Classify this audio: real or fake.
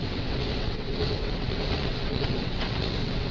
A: fake